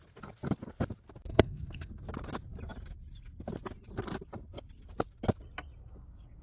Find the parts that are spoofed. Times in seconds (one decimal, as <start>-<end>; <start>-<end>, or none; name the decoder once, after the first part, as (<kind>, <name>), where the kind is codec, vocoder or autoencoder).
1.3-1.9 (codec, SNAC)